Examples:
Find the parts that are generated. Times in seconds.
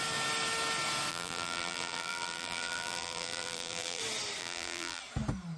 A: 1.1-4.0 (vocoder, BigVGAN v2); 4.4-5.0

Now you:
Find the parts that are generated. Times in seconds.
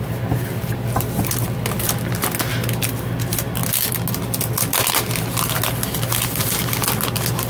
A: none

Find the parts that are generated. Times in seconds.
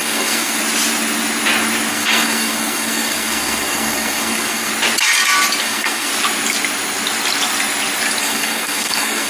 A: 0.0-0.6 (codec, SNAC); 1.9-4.7; 5.6-6.1; 8.2-9.3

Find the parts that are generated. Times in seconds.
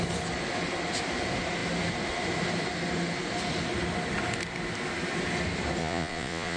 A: 5.8-6.6 (vocoder, Vocos)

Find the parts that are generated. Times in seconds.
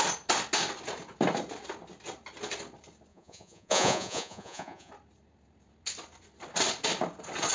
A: 3.1-4.9 (vocoder, Vocos)